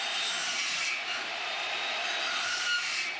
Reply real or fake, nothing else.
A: fake